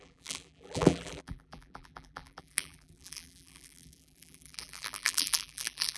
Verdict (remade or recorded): remade